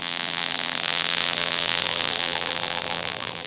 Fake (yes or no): yes